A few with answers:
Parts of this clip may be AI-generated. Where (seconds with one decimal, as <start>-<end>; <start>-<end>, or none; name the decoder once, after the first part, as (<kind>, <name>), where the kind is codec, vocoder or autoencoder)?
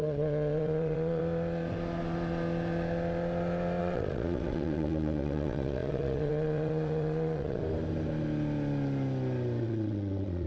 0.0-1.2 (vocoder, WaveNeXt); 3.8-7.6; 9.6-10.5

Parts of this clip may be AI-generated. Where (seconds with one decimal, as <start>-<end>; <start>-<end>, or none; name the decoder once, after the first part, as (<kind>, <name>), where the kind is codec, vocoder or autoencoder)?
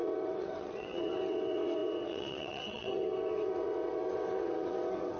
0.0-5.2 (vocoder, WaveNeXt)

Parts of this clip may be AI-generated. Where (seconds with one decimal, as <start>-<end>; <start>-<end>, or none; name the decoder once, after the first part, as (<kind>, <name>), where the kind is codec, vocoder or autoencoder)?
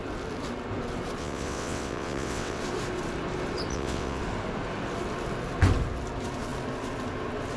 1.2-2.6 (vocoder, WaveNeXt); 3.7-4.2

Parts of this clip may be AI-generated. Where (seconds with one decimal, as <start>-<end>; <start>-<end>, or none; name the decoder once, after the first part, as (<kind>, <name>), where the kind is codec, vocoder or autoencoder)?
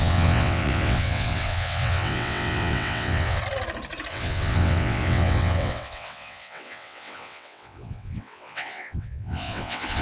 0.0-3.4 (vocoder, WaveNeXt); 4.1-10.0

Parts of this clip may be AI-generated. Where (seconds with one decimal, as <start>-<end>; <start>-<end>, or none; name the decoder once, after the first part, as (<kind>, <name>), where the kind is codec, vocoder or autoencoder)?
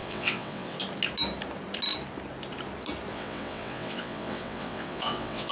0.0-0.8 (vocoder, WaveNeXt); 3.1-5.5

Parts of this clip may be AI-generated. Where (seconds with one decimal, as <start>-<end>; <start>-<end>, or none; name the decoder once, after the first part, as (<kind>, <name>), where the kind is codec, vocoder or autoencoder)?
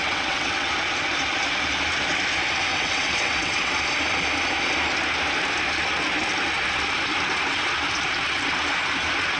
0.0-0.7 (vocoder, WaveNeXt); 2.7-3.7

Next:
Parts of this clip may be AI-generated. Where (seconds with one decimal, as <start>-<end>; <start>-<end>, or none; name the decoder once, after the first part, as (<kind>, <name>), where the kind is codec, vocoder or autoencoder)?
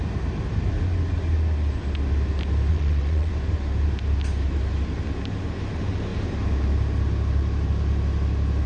2.7-3.3 (vocoder, WaveNeXt)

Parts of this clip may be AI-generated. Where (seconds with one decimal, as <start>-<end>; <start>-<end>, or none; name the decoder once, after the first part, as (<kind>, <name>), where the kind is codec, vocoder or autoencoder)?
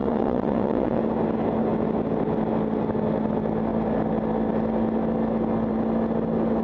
0.0-1.0 (vocoder, WaveNeXt)